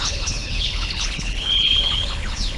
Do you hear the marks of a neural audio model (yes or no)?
yes